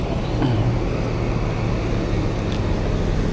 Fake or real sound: real